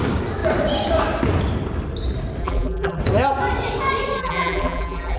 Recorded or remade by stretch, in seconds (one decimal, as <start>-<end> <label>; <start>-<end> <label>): 0.0-2.4 recorded; 2.4-3.0 remade; 3.0-4.2 recorded; 4.2-5.2 remade